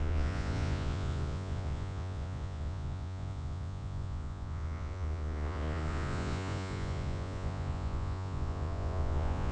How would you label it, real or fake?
fake